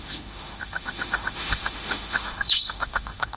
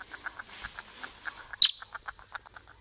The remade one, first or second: first